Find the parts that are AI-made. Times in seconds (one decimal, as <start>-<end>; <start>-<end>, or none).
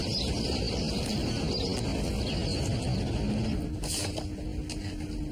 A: none